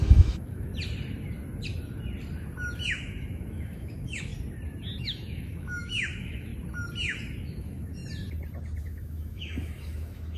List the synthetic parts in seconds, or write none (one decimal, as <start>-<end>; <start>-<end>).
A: 0.0-0.7; 2.9-4.3; 5.0-6.5; 7.4-8.0; 8.8-10.4